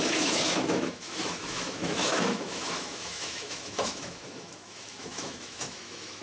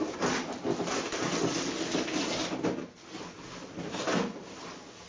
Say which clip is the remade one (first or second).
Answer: first